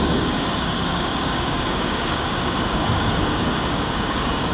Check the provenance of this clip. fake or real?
fake